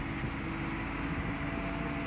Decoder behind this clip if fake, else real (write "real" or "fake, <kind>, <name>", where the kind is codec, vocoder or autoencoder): real